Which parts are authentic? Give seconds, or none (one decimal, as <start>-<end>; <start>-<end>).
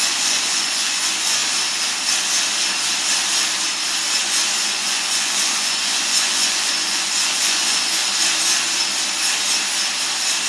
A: 1.4-4.2; 8.0-10.5